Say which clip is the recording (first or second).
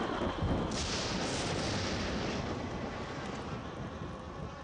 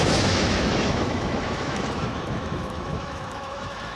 first